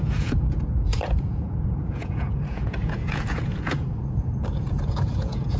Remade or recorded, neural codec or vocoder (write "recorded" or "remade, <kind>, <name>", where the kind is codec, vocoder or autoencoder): remade, vocoder, Vocos